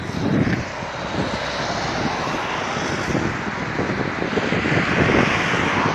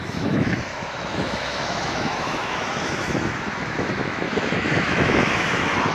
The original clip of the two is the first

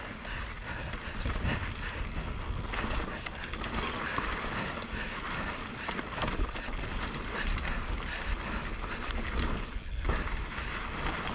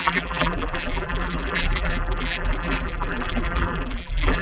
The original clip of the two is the first